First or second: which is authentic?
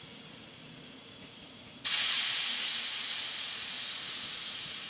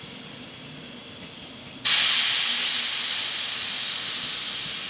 second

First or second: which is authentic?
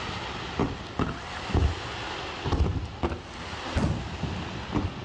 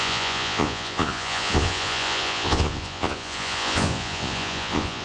first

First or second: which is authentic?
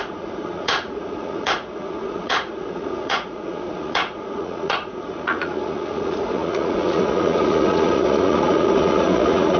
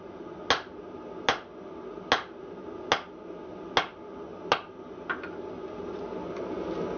second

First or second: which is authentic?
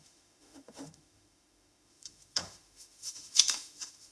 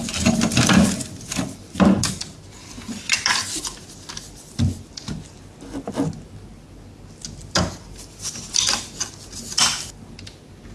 second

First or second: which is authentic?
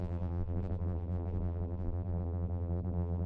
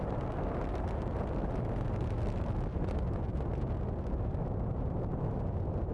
second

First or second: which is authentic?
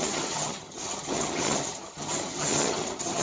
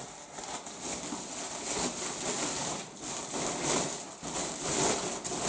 second